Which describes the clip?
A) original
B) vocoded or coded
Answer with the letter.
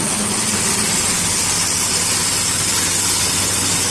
A